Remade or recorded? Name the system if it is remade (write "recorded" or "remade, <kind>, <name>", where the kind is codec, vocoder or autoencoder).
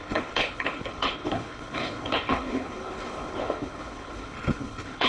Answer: remade, codec, HILCodec